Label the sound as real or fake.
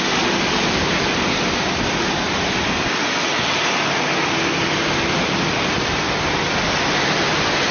real